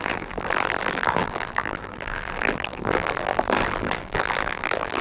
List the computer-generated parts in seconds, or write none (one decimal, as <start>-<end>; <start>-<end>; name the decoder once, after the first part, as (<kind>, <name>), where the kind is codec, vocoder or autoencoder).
0.0-5.0 (vocoder, BigVGAN v2)